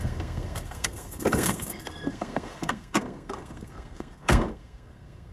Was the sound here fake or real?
fake